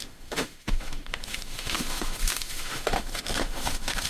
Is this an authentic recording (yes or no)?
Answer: no